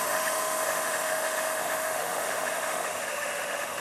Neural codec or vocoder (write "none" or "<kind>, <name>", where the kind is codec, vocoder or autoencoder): autoencoder, DAC-VAE